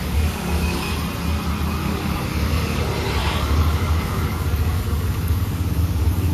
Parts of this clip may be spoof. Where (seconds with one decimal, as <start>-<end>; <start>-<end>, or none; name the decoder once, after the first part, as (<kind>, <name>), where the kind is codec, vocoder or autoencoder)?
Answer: 0.0-0.9 (codec, DAC); 1.8-2.8; 3.2-6.3